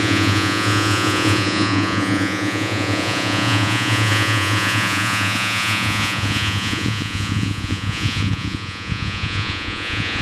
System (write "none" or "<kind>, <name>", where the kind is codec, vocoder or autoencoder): vocoder, Vocos